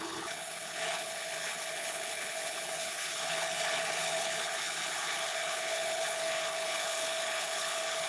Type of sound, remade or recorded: remade